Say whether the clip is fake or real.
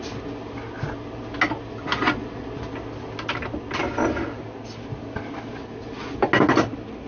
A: real